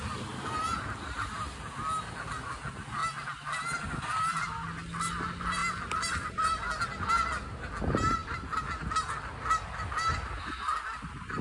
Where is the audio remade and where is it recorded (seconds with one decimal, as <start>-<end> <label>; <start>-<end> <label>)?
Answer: 0.0-11.4 recorded